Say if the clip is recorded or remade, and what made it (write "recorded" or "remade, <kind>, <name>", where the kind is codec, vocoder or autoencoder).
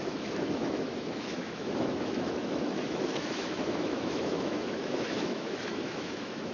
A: remade, autoencoder, DAC-VAE